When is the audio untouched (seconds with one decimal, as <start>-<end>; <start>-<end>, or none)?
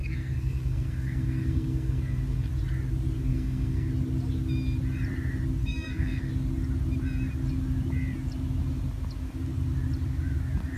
2.5-3.3; 3.9-5.6; 6.3-10.8